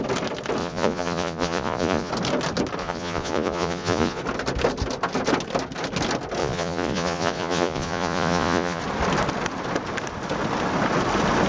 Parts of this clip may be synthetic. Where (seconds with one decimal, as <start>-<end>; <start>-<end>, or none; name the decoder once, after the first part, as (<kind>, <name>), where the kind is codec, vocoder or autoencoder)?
0.6-2.1 (vocoder, Vocos); 2.8-4.2; 6.4-8.8